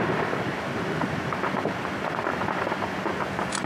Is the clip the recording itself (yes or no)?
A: yes